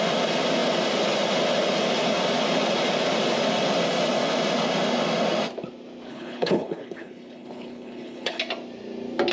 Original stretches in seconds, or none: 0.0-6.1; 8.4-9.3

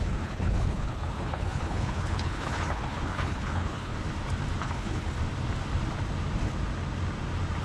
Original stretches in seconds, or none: 3.9-4.6; 5.2-7.6

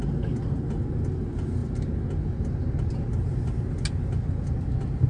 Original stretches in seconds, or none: 0.0-5.1

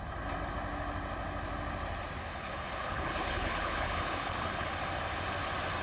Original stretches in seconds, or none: 0.0-2.3; 4.7-5.8

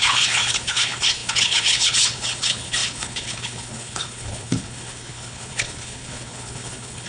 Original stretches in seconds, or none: none

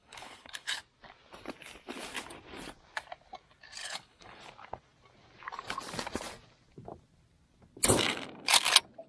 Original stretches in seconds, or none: 0.8-3.8; 4.4-9.1